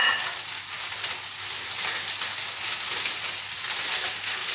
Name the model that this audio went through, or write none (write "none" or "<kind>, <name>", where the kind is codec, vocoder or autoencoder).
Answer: none